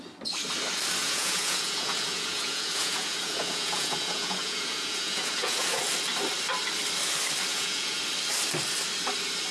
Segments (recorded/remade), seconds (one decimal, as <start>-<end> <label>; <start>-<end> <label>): 0.0-1.0 recorded; 1.0-5.8 remade; 5.8-7.5 recorded; 7.5-8.0 remade; 8.0-9.5 recorded